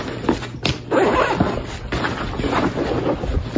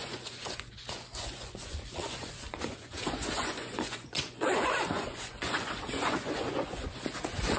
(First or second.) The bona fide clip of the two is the first